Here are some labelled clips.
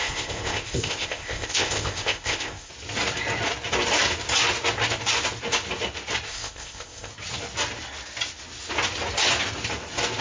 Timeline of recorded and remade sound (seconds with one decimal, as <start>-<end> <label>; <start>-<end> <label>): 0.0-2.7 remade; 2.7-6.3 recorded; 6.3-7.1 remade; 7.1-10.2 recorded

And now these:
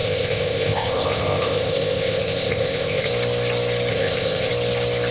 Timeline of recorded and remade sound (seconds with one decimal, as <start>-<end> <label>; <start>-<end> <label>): 0.0-3.1 remade; 3.1-3.9 recorded; 3.9-4.5 remade; 4.5-5.1 recorded

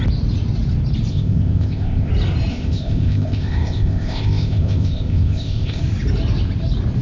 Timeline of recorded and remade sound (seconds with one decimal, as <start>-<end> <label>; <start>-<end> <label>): 0.0-1.1 recorded; 1.1-2.1 remade; 2.1-2.5 recorded; 2.5-5.8 remade; 5.8-7.0 recorded

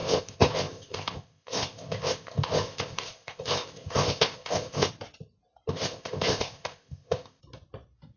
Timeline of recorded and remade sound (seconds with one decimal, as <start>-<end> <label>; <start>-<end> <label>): 0.0-4.9 remade; 4.9-5.7 recorded; 5.7-7.4 remade; 7.4-8.2 recorded